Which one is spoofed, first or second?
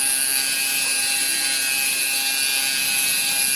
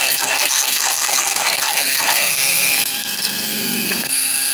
second